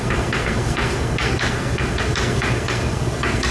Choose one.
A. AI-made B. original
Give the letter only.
A